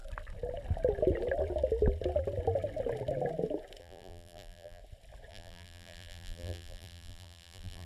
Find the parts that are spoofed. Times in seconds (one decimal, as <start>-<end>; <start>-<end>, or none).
3.8-4.8; 5.3-7.9